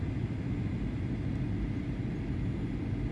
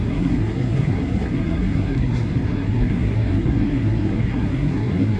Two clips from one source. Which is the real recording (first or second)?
first